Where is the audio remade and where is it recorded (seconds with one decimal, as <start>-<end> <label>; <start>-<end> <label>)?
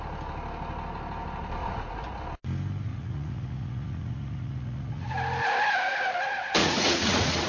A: 0.0-1.6 recorded; 1.6-2.2 remade; 2.2-2.9 recorded; 2.9-5.1 remade; 5.1-6.6 recorded; 6.6-7.5 remade